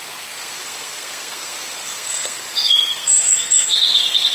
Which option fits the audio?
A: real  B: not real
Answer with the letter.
B